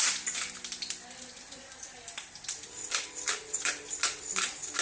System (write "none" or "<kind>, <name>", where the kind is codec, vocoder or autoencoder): none